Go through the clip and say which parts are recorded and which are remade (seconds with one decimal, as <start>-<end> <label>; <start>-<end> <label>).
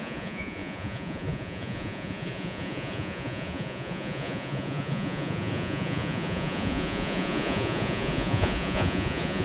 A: 0.0-9.4 remade